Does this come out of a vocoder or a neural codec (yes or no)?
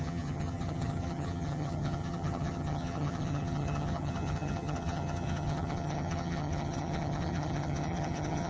yes